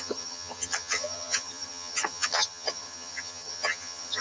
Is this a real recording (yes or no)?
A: no